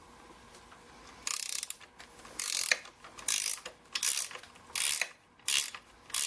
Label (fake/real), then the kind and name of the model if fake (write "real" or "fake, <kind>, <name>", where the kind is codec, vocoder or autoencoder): real